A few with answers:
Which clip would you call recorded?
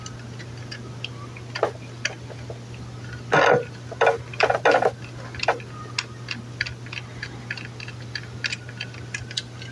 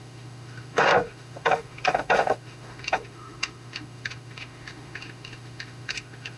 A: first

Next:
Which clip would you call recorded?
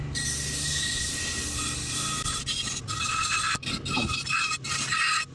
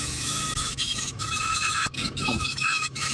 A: first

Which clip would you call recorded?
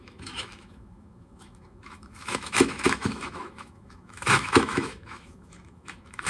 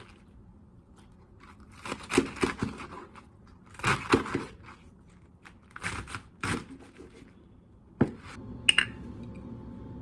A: second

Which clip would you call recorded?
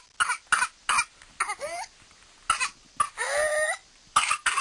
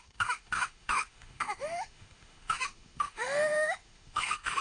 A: first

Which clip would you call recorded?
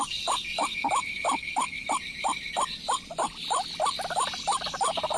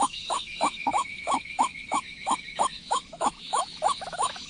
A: first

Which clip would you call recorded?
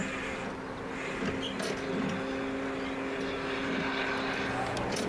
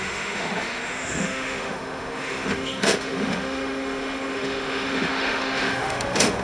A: first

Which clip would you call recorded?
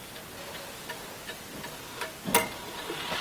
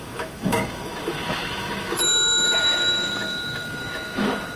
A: first